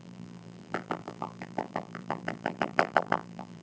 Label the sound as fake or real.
fake